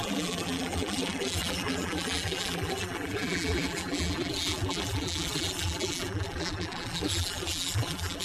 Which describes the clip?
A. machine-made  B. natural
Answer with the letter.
A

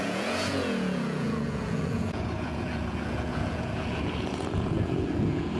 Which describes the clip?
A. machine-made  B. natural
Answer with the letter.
A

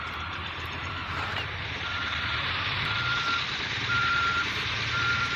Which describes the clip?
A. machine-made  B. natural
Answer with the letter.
A